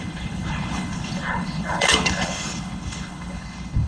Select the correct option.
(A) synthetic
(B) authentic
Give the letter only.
A